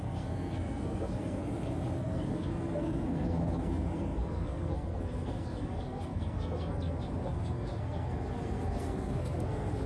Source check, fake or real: fake